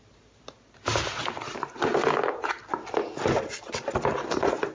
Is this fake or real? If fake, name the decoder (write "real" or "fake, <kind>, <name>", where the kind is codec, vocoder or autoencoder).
real